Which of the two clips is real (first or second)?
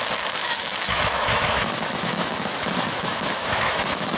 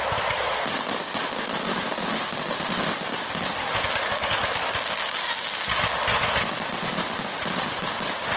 second